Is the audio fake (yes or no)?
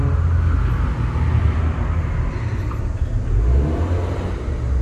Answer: no